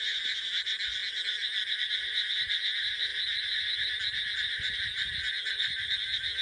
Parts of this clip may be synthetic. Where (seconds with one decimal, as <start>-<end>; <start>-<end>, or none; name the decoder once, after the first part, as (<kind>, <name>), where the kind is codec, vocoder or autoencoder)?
none